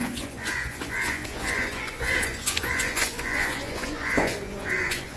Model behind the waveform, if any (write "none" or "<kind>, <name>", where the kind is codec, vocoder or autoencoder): vocoder, Vocos